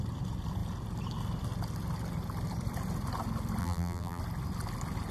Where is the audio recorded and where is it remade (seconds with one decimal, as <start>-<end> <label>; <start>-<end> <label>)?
0.0-3.6 recorded; 3.6-4.2 remade; 4.2-5.1 recorded